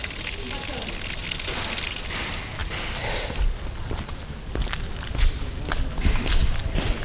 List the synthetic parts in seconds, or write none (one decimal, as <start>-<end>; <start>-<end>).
none